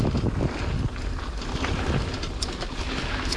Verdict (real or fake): real